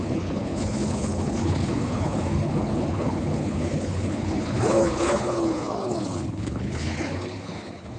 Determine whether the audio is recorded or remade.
remade